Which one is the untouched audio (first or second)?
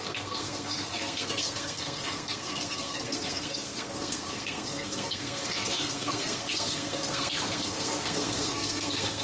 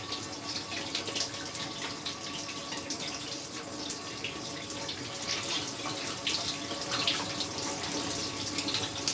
second